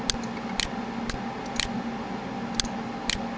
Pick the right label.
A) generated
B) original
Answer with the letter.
B